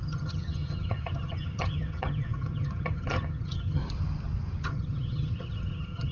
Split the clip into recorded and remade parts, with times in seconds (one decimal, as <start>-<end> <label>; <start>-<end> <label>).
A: 0.0-3.8 remade; 3.8-4.7 recorded; 4.7-6.1 remade